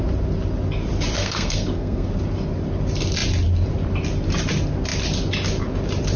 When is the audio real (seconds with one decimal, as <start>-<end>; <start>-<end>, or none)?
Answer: 0.0-1.2; 2.1-6.2